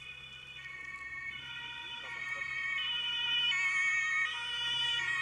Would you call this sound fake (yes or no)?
no